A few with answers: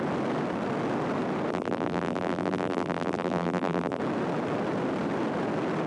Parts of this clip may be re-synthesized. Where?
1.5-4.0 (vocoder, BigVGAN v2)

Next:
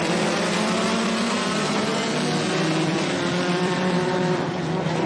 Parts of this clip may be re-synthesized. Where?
0.0-1.9 (vocoder, BigVGAN v2); 2.5-5.1